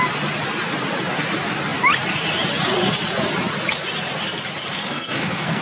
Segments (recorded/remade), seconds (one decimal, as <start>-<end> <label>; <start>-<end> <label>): 0.0-4.8 recorded; 4.8-5.6 remade